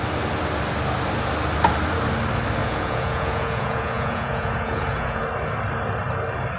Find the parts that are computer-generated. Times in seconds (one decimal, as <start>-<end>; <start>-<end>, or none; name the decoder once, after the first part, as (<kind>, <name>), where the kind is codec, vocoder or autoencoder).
2.6-5.2 (vocoder, Vocos)